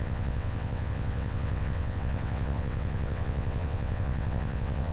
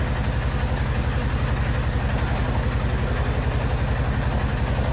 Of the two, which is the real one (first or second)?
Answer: second